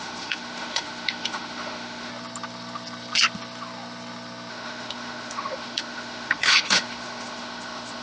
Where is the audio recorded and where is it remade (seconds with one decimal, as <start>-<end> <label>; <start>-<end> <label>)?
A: 0.0-2.1 remade; 2.1-4.5 recorded; 4.5-8.0 remade